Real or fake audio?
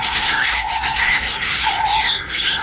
fake